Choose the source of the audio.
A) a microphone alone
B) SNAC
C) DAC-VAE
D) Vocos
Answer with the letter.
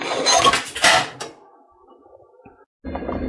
A